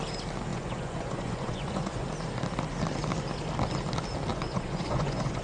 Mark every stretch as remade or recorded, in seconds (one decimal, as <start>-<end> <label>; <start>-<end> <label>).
0.0-0.5 recorded; 0.5-2.1 remade; 2.1-4.3 recorded; 4.3-5.4 remade